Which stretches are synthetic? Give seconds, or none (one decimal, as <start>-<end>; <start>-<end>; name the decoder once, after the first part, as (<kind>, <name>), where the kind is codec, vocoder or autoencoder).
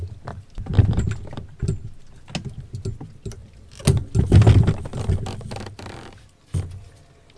none